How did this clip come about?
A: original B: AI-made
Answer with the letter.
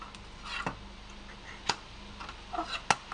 A